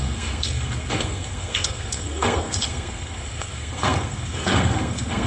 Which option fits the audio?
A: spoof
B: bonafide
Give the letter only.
A